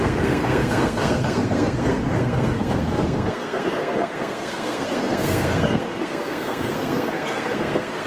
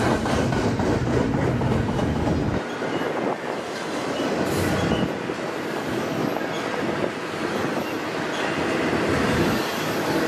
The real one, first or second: second